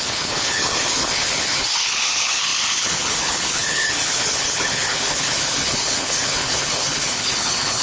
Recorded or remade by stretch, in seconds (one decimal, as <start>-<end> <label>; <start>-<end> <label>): 0.0-7.8 remade